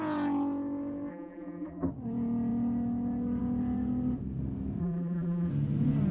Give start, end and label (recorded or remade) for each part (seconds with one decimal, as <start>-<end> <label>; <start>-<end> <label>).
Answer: 0.0-1.1 recorded; 1.1-1.9 remade; 1.9-4.8 recorded; 4.8-5.5 remade; 5.5-6.1 recorded